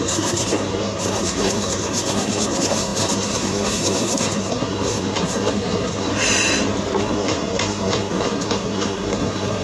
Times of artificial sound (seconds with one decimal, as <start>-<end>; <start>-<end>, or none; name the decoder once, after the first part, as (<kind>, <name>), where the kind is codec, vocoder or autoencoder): 0.0-6.1 (codec, SNAC); 7.0-9.6